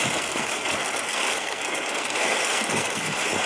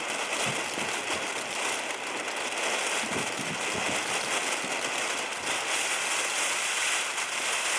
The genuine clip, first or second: second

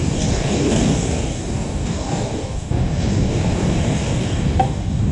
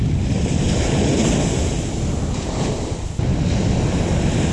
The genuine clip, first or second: second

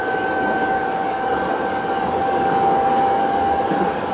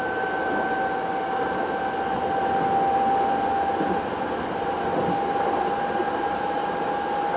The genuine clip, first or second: second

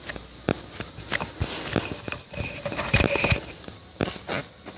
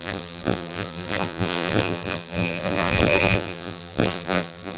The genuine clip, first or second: first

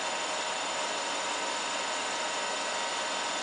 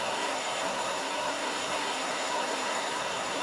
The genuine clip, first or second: first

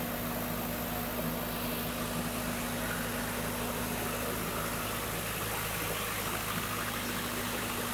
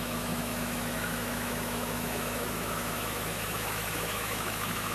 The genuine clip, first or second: first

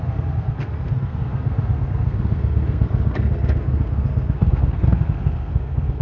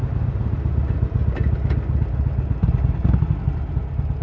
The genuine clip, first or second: second